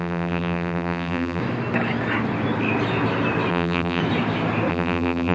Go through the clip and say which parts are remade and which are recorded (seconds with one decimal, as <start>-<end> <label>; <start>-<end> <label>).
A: 0.0-1.4 remade; 1.4-3.5 recorded; 3.5-4.0 remade; 4.0-4.7 recorded; 4.7-5.3 remade